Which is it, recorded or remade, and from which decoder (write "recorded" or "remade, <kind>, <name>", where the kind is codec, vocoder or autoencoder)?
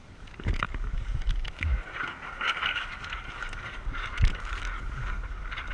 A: remade, codec, DAC